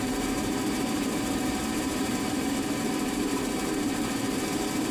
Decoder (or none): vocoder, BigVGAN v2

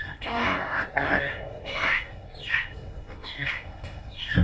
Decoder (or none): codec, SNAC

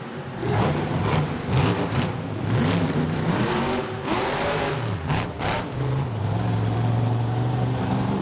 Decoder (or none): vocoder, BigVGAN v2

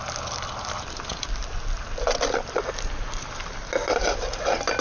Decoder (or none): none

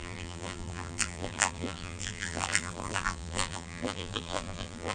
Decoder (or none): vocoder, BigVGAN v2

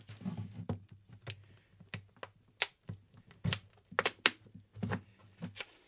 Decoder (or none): none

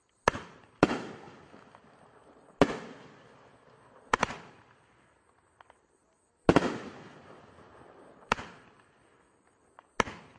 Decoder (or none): none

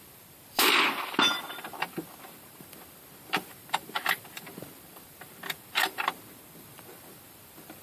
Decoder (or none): vocoder, BigVGAN v2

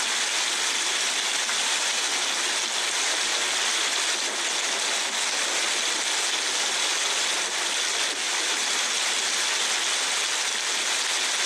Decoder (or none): none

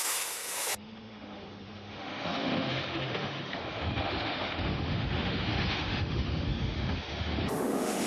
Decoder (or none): autoencoder, DAC-VAE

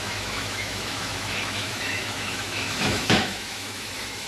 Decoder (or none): autoencoder, DAC-VAE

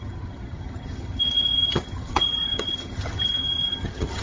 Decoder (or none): vocoder, HiFi-GAN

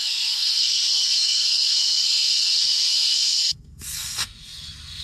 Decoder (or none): codec, SNAC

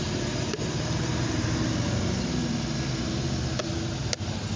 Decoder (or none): none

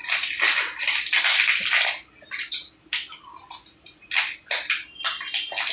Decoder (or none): none